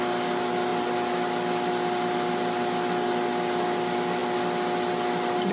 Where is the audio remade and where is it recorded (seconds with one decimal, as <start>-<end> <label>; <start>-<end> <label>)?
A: 0.0-5.5 recorded